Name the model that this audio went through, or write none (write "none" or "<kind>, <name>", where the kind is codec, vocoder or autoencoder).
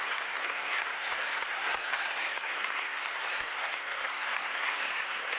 codec, SNAC